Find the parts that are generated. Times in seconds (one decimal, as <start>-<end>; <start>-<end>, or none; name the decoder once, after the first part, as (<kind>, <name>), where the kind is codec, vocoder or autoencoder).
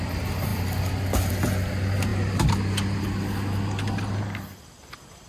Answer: none